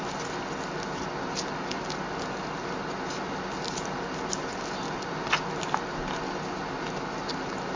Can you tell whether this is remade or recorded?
recorded